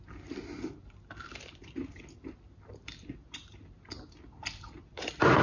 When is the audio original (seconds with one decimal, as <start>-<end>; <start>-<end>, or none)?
0.0-5.4